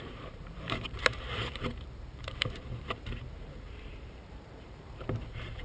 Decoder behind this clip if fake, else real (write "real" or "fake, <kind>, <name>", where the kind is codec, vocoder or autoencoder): fake, vocoder, BigVGAN v2